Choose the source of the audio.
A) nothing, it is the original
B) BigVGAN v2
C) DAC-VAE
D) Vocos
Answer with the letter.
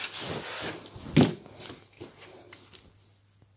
A